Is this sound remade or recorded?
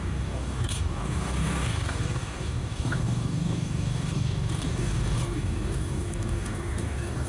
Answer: remade